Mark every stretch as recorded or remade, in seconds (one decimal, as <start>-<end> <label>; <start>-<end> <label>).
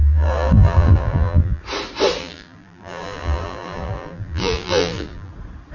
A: 0.0-1.6 remade; 1.6-2.2 recorded; 2.2-5.3 remade; 5.3-5.7 recorded